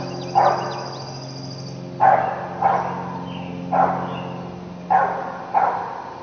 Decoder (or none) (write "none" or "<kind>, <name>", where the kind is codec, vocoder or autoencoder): none